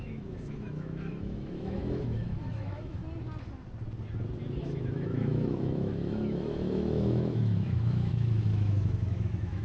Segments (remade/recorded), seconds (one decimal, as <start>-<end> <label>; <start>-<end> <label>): 0.0-3.0 remade; 3.0-4.6 recorded; 4.6-9.6 remade